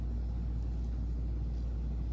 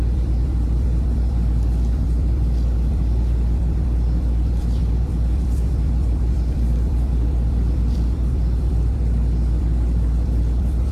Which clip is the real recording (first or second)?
first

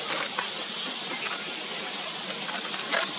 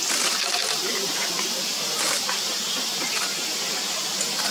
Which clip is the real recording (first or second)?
second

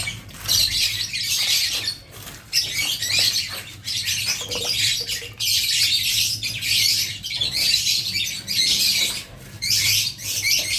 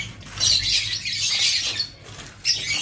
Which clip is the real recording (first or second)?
second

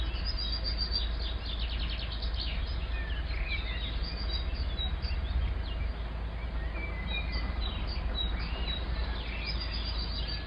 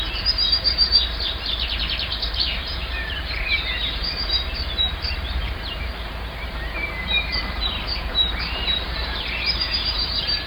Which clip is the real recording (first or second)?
first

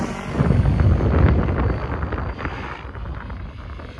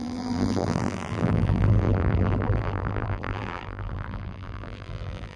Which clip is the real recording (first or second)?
first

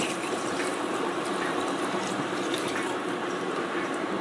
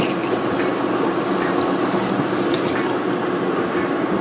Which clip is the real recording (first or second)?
second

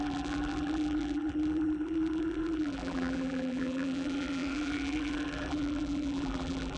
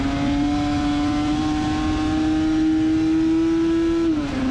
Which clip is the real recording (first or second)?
second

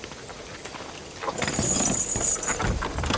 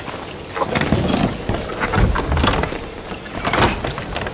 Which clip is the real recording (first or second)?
second